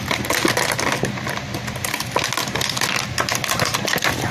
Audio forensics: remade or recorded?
recorded